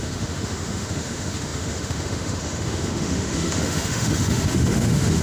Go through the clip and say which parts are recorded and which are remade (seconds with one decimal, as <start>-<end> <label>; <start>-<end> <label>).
0.0-5.2 remade